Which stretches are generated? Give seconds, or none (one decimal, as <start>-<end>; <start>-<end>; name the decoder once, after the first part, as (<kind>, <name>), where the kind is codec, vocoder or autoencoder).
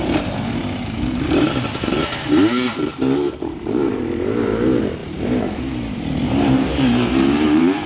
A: 0.0-7.9 (vocoder, BigVGAN v2)